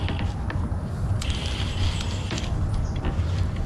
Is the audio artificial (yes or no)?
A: no